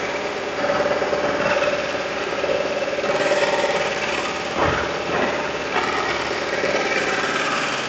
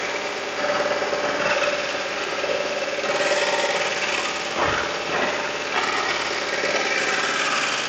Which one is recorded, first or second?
second